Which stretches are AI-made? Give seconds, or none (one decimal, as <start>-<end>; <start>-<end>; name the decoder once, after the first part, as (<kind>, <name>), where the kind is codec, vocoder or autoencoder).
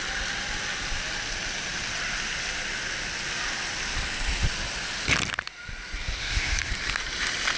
6.2-6.7 (codec, ZipCodec)